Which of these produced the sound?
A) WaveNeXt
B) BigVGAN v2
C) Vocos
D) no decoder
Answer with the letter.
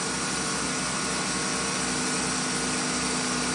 D